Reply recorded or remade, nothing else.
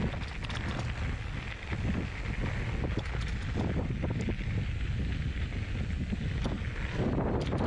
recorded